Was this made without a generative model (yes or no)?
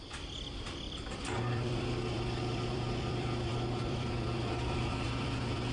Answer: no